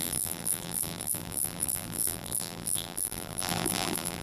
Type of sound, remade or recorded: remade